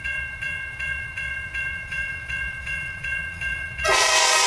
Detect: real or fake fake